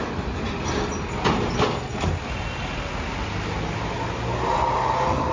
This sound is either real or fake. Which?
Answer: real